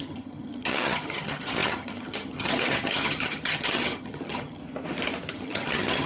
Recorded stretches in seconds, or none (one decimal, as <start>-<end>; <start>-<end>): 4.6-5.3